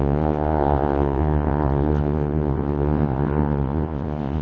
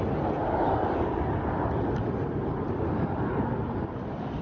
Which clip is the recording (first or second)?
second